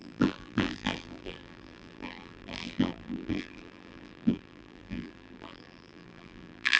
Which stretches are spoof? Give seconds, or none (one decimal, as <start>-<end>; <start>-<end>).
0.0-6.8